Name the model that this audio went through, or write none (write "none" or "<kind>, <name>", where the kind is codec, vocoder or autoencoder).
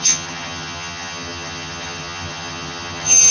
vocoder, HiFi-GAN